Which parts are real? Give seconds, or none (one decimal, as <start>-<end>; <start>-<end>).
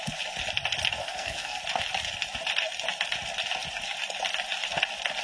0.0-1.0; 1.6-5.2